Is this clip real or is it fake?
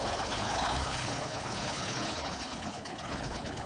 fake